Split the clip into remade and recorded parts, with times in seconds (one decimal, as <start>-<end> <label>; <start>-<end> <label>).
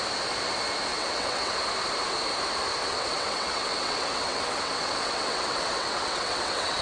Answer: 0.0-0.9 recorded; 0.9-1.5 remade; 1.5-2.8 recorded; 2.8-6.8 remade